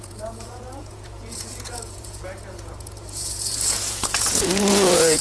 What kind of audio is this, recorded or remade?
remade